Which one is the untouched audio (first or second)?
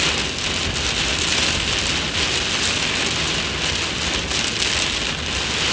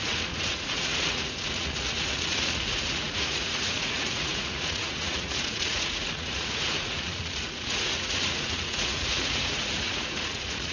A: first